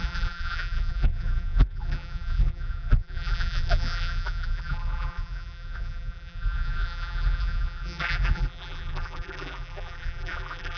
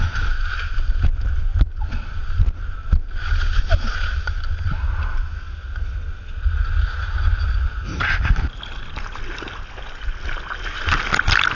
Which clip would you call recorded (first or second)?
second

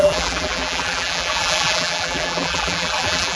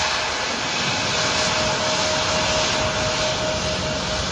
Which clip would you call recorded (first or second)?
second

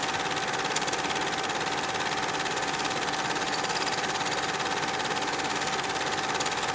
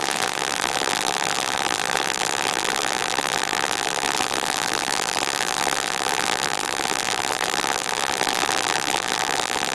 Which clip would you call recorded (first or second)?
first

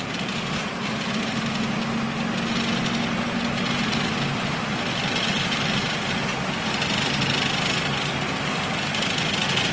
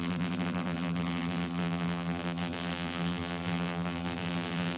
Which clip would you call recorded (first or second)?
first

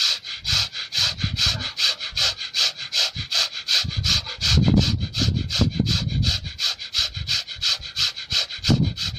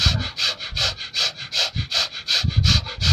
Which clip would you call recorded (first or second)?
second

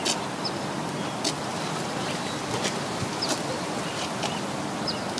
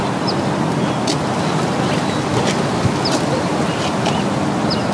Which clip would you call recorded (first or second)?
second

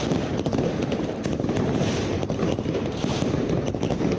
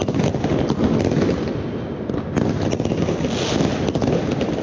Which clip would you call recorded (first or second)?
second